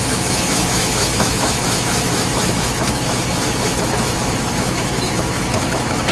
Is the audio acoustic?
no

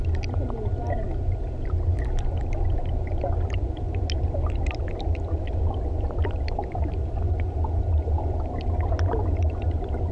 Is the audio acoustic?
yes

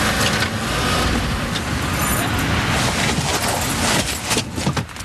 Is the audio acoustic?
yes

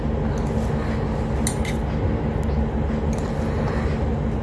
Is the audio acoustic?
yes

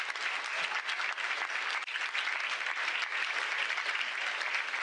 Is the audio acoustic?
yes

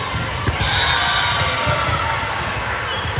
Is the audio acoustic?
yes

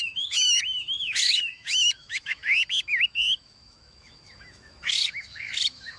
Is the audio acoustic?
no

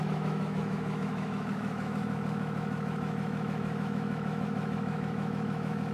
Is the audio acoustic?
no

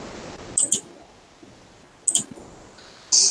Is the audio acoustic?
yes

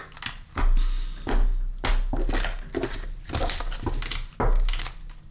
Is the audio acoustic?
yes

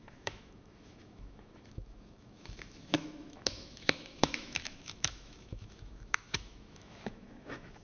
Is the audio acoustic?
no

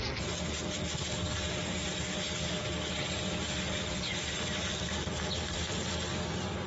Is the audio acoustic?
yes